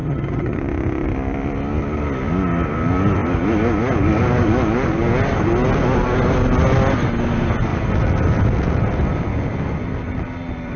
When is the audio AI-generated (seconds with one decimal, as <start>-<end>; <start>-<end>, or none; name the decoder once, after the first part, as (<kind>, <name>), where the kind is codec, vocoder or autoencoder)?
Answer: 0.0-0.6 (vocoder, HiFi-GAN)